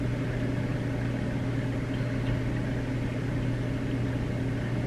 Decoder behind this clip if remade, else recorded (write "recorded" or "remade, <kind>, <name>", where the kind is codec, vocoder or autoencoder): recorded